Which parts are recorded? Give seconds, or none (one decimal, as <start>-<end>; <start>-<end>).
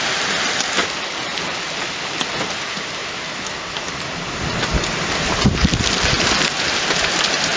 0.0-7.6